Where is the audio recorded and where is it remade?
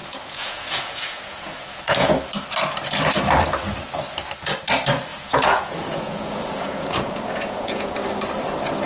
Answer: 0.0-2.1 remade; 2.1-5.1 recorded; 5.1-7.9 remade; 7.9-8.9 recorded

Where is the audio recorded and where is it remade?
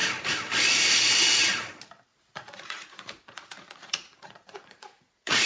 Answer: 0.0-2.1 recorded; 2.1-5.5 remade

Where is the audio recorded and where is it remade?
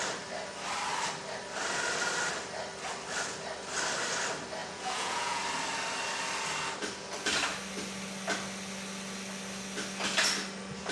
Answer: 0.0-4.6 recorded; 4.6-5.4 remade; 5.4-10.9 recorded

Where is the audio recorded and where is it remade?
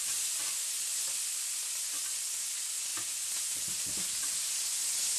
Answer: 0.0-5.2 recorded